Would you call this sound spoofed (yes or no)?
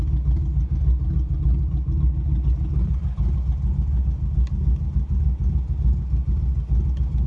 no